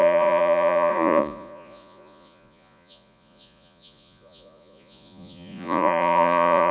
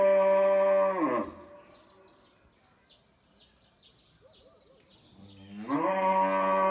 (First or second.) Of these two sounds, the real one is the second